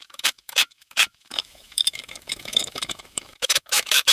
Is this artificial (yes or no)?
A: yes